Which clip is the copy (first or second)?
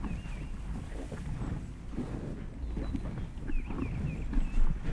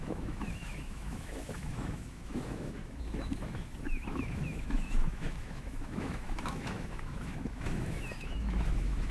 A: second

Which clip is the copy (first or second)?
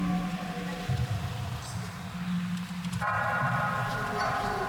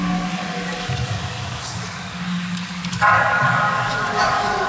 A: second